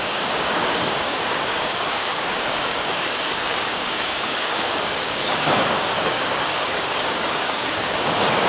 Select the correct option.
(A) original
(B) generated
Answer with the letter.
B